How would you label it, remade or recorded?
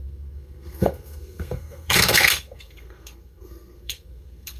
remade